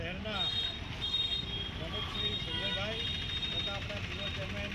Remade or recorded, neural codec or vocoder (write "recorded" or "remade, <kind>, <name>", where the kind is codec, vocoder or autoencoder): recorded